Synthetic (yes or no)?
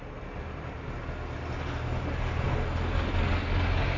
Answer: no